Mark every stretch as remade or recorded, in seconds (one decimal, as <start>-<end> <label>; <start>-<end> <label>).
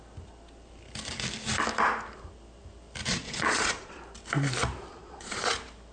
0.0-3.1 recorded; 3.1-4.0 remade; 4.0-4.9 recorded; 4.9-5.5 remade; 5.5-5.9 recorded